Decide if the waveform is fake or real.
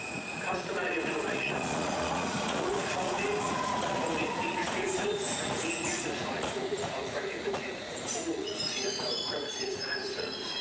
fake